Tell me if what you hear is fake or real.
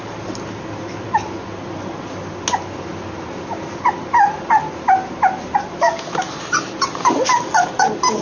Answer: real